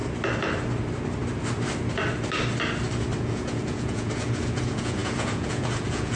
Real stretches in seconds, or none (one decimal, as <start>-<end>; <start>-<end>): 0.0-3.2